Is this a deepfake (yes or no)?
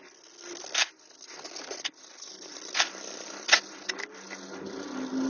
no